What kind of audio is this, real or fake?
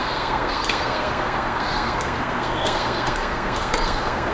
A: fake